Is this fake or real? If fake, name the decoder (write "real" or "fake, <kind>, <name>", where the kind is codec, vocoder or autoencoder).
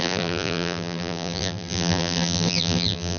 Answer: fake, vocoder, BigVGAN v2